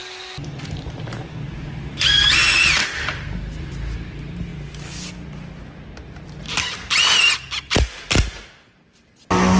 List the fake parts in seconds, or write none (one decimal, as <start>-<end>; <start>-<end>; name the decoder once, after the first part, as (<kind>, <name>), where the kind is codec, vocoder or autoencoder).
none